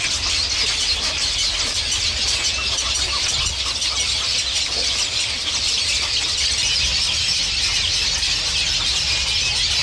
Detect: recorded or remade recorded